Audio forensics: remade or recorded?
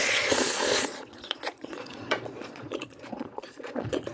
remade